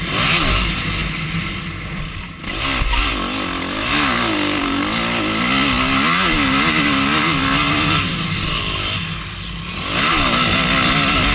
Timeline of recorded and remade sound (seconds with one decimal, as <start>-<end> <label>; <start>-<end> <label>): 0.0-3.8 recorded; 3.8-4.8 remade; 4.8-11.3 recorded